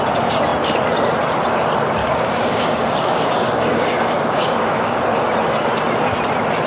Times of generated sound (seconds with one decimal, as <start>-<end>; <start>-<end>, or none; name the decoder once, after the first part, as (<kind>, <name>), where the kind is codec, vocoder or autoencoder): 2.0-5.0 (codec, DAC)